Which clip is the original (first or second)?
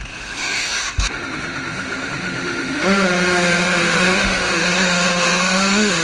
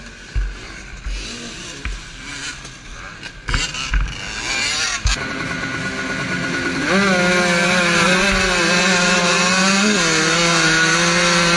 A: second